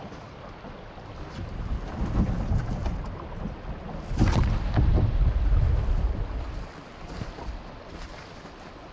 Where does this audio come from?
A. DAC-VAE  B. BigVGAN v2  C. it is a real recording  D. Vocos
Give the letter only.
C